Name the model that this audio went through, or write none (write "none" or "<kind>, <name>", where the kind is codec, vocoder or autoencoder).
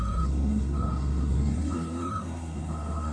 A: codec, SNAC